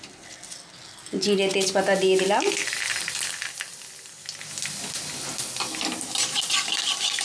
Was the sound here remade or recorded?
recorded